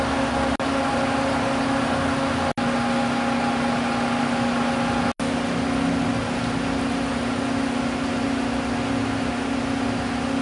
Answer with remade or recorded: recorded